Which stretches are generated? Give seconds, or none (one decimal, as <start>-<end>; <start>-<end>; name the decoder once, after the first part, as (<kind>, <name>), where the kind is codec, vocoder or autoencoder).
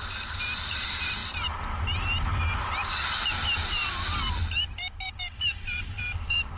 0.0-1.2 (vocoder, BigVGAN v2); 3.2-3.8; 5.2-6.6